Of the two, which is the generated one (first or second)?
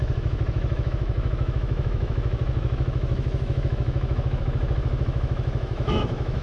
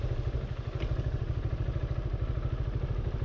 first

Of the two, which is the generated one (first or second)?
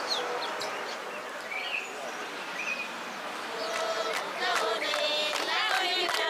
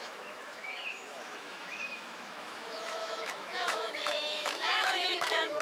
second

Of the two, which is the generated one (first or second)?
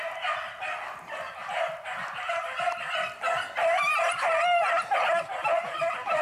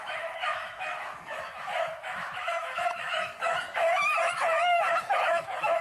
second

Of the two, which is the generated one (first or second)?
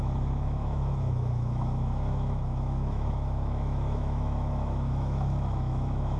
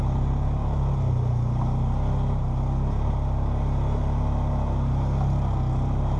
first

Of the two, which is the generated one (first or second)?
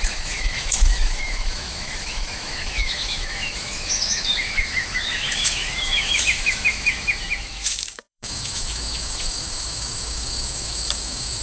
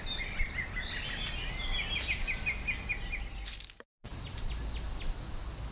first